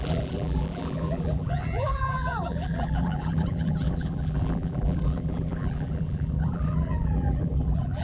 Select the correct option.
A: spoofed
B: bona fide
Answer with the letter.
A